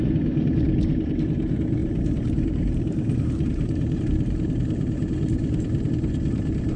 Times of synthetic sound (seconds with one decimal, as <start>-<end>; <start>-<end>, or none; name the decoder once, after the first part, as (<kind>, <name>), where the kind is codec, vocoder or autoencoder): 1.8-5.9 (vocoder, BigVGAN v2)